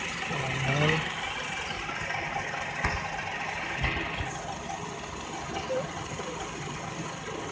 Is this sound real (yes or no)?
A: yes